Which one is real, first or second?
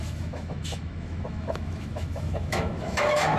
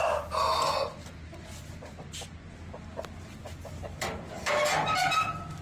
second